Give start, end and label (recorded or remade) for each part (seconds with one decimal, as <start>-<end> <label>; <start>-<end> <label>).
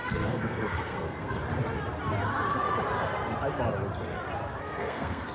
0.0-1.4 remade; 1.4-4.6 recorded; 4.6-5.3 remade